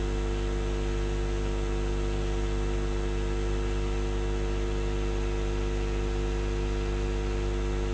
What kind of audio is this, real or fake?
real